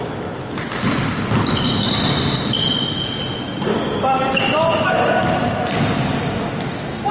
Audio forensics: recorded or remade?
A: recorded